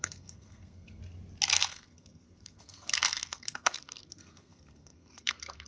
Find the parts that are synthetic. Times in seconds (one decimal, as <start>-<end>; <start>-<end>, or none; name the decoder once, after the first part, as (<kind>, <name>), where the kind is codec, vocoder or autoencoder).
0.0-1.0 (codec, SNAC); 1.5-5.7